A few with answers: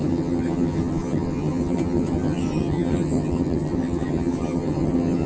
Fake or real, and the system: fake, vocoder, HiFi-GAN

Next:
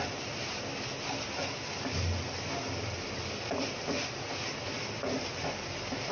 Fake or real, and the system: real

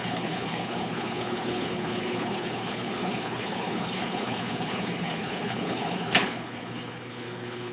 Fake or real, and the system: fake, codec, HILCodec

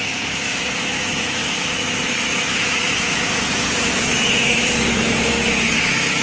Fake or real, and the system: fake, autoencoder, DAC-VAE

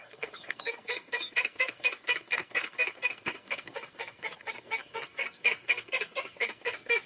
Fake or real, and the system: fake, codec, SNAC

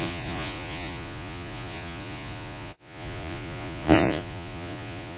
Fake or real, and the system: fake, vocoder, Vocos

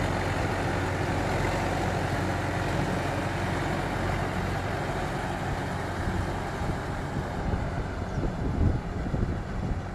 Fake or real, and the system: real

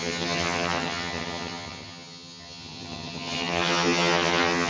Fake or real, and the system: fake, vocoder, HiFi-GAN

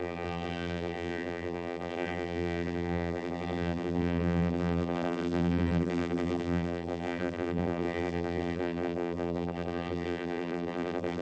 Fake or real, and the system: fake, vocoder, BigVGAN v2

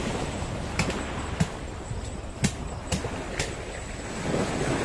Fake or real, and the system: real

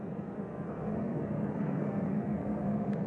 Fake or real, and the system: fake, codec, SNAC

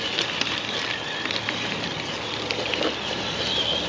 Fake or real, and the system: real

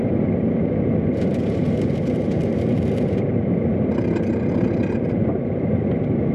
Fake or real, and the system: real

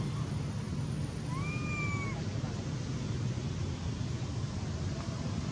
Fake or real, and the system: real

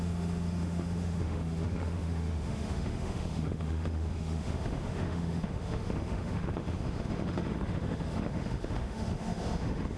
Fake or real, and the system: fake, autoencoder, DAC-VAE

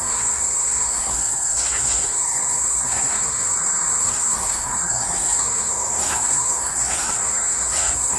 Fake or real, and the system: fake, codec, SNAC